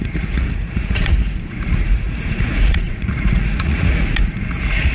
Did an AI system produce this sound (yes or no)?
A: yes